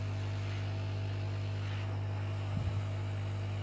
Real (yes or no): yes